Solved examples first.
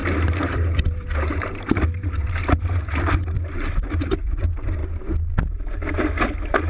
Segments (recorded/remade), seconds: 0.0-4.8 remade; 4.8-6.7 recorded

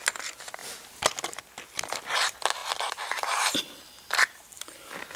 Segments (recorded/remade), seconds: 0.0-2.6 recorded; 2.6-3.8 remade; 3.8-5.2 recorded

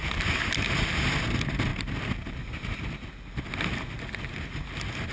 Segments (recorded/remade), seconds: 0.0-5.1 recorded